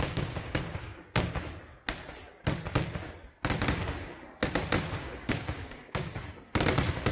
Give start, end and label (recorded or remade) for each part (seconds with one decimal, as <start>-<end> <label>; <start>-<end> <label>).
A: 0.0-0.9 remade; 0.9-5.0 recorded; 5.0-6.1 remade; 6.1-7.1 recorded